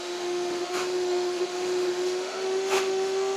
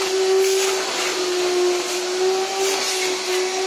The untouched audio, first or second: second